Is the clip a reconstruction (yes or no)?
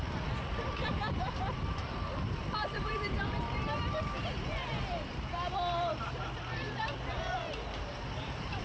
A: yes